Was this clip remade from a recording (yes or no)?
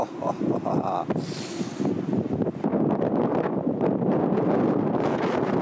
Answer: no